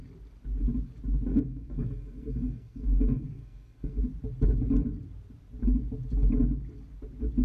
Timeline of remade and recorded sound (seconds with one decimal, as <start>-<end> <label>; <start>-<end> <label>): 0.0-1.3 recorded; 1.3-4.0 remade; 4.0-7.4 recorded